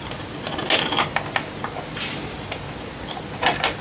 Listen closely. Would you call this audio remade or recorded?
recorded